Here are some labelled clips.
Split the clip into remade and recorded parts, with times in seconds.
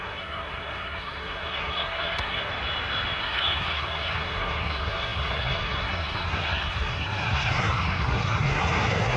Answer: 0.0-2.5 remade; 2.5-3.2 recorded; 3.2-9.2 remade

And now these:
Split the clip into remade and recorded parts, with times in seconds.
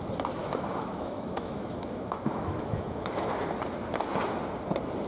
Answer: 0.0-0.4 recorded; 0.4-3.3 remade; 3.3-5.1 recorded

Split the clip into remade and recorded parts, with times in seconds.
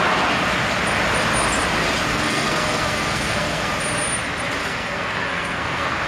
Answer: 0.0-2.1 recorded; 2.1-3.7 remade; 3.7-4.6 recorded; 4.6-6.1 remade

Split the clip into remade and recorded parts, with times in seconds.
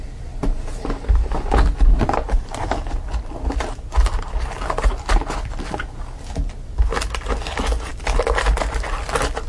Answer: 0.0-9.5 recorded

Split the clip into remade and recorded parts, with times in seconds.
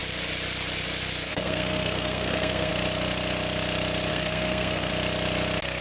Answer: 0.0-1.3 recorded; 1.3-2.7 remade; 2.7-4.1 recorded; 4.1-4.9 remade; 4.9-5.8 recorded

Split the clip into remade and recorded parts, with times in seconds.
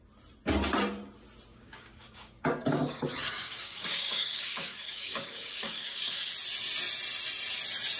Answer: 0.0-1.5 recorded; 1.5-6.3 remade; 6.3-8.0 recorded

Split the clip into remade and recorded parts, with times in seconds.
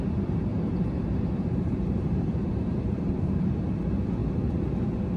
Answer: 0.0-0.5 recorded; 0.5-3.6 remade; 3.6-5.2 recorded